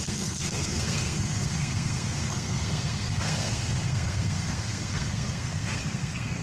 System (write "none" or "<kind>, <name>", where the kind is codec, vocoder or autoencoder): codec, SNAC